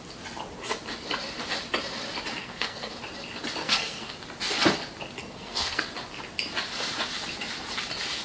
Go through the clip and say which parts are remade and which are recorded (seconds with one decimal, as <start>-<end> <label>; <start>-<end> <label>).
0.0-2.4 recorded; 2.4-2.9 remade; 2.9-3.6 recorded; 3.6-4.1 remade; 4.1-5.2 recorded; 5.2-5.8 remade; 5.8-8.2 recorded